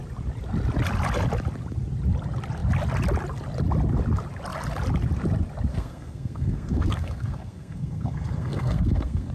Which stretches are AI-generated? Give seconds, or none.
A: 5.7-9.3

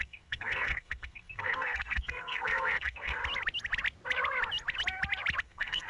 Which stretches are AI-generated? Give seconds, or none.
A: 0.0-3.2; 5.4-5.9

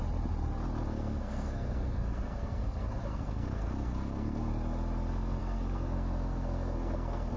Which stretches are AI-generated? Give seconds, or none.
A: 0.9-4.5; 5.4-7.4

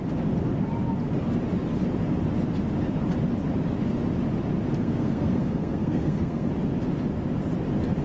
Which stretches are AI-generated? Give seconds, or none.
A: 4.8-6.5

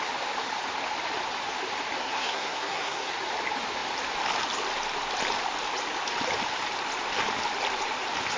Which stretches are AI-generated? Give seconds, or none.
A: 2.0-3.1

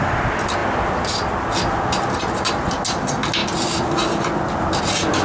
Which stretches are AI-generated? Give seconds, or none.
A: none